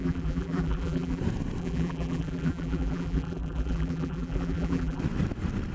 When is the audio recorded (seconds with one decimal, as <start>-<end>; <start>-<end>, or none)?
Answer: 1.2-1.6; 5.0-5.7